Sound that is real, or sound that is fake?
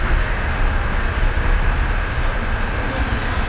real